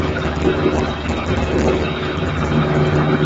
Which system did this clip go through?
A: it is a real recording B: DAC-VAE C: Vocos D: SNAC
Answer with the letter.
B